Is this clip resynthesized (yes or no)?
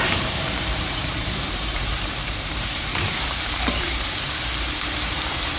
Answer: yes